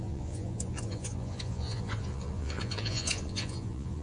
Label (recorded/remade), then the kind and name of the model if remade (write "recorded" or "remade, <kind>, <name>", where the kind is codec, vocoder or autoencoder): remade, vocoder, Vocos